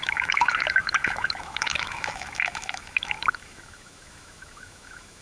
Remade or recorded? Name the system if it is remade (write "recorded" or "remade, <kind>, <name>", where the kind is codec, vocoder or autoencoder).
remade, autoencoder, DAC-VAE